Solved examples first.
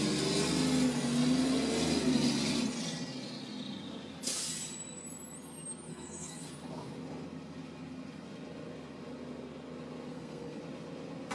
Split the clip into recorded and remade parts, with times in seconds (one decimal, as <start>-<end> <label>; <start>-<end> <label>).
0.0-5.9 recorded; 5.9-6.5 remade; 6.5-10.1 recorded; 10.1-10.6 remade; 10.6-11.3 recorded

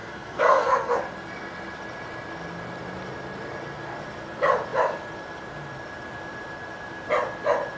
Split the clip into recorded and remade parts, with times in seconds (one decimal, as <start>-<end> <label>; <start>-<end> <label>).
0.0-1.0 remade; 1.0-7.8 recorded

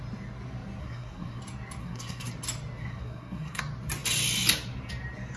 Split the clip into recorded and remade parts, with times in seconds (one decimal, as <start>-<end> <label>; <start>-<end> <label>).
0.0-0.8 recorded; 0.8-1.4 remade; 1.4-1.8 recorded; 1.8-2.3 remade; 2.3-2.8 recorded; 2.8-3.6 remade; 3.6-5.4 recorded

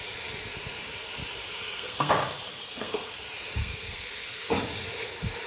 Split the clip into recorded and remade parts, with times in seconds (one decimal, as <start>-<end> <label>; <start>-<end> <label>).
0.0-1.5 recorded; 1.5-2.1 remade; 2.1-2.5 recorded; 2.5-3.1 remade; 3.1-3.6 recorded; 3.6-4.5 remade; 4.5-5.5 recorded